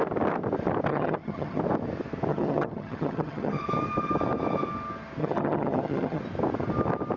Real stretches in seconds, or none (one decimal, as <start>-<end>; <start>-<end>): 0.0-0.9; 1.6-2.3; 3.6-5.2; 6.2-7.2